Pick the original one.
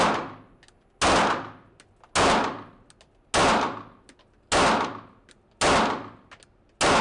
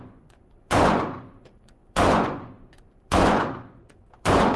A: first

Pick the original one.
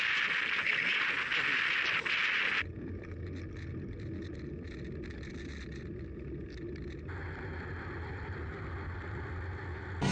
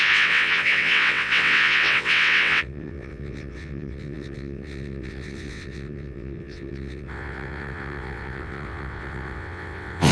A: first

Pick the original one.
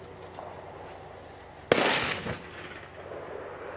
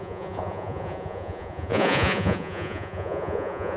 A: first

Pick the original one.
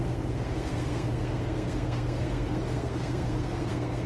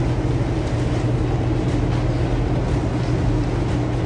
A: second